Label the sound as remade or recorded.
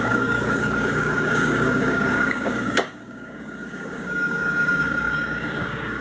remade